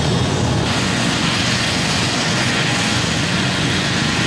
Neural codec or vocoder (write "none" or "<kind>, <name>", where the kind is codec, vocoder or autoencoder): vocoder, Vocos